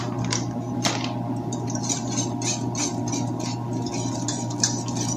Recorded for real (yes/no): yes